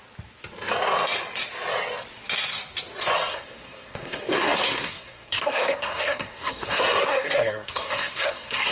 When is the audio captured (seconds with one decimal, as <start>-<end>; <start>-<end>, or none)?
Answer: 0.0-3.3